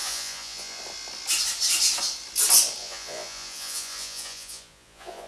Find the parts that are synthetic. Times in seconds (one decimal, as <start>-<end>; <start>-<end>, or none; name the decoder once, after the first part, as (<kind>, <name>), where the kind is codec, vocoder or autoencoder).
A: 0.0-0.8 (vocoder, Vocos); 2.8-5.3